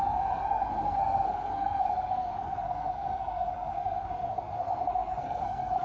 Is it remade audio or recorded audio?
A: remade